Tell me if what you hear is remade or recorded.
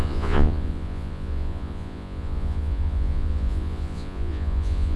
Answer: remade